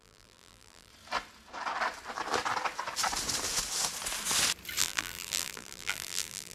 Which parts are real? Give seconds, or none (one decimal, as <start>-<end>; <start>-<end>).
0.9-4.8